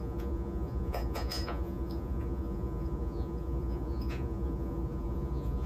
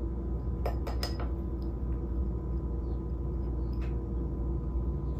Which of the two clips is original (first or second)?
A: second